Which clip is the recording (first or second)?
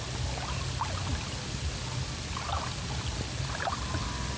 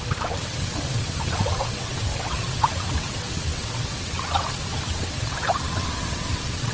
first